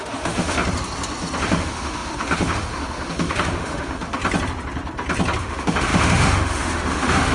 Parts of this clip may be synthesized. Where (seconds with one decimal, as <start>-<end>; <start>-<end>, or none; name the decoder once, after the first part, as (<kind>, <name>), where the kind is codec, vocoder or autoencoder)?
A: 0.0-0.6 (autoencoder, DAC-VAE); 1.4-4.2; 5.4-7.3